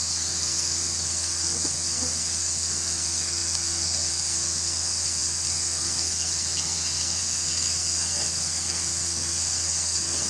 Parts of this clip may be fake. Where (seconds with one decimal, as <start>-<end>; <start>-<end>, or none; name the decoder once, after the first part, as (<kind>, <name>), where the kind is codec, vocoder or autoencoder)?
0.0-10.3 (codec, SNAC)